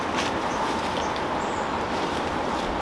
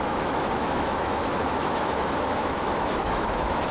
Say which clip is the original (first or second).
first